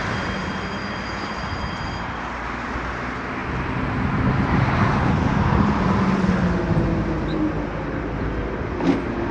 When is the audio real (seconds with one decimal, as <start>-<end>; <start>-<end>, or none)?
0.0-9.3